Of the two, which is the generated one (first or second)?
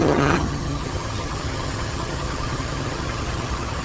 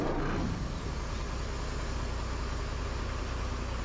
first